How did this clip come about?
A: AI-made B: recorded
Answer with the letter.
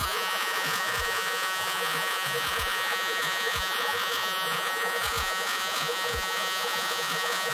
A